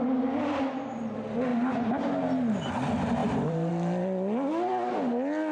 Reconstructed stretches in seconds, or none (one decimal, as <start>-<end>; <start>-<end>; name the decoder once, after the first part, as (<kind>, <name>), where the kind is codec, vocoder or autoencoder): 1.5-2.7 (vocoder, BigVGAN v2); 3.2-3.7